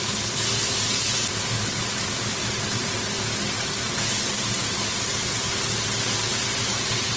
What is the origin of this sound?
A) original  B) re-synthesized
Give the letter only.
A